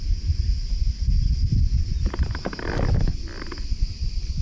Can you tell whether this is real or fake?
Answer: real